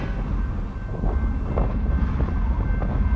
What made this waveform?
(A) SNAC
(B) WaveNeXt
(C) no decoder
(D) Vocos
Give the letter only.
C